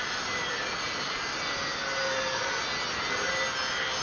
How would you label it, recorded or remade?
recorded